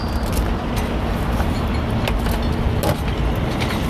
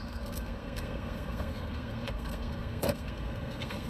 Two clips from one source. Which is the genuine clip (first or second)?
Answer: first